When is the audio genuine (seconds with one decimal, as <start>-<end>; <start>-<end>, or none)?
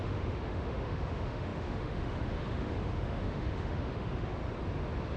4.4-5.2